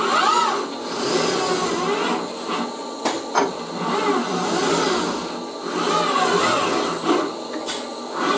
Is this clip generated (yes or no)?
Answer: no